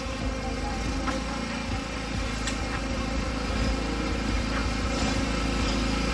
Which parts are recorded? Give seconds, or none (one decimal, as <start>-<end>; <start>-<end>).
0.0-6.1